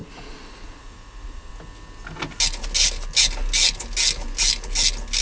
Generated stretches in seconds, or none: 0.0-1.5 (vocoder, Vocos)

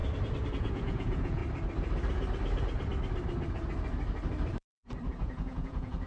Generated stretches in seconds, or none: 0.5-1.4 (vocoder, Vocos); 5.1-6.1

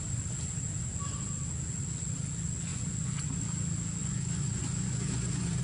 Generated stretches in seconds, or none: 2.7-3.4 (vocoder, Vocos); 4.0-5.6

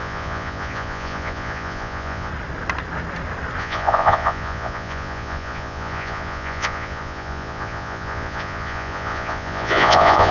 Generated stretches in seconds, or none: 0.0-2.3 (vocoder, Vocos); 3.6-10.3

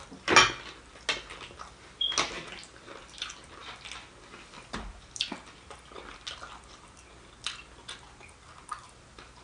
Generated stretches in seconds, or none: none